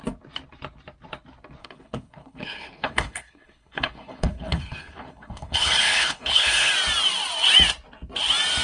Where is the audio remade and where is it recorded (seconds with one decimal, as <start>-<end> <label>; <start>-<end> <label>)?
0.0-1.6 recorded; 1.6-6.7 remade; 6.7-8.6 recorded